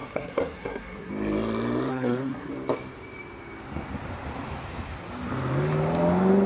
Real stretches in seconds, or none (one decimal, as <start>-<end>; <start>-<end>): 1.1-1.9; 2.5-6.5